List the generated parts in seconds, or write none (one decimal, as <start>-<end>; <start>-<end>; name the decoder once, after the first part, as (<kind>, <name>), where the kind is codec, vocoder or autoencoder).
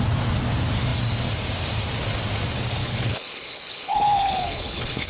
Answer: 2.8-5.1 (codec, HILCodec)